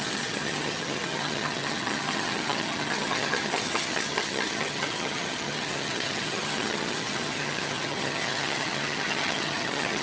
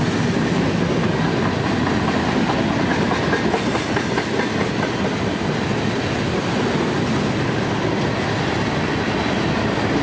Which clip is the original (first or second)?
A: second